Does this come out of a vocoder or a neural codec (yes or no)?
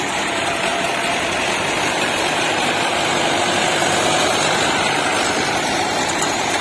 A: yes